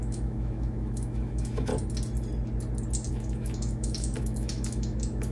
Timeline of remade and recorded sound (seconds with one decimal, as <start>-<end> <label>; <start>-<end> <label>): 0.0-1.7 remade; 1.7-3.1 recorded; 3.1-5.3 remade